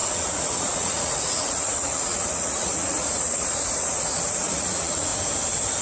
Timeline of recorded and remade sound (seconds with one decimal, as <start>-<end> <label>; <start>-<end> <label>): 0.0-5.1 remade; 5.1-5.8 recorded